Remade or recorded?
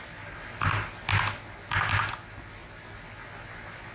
recorded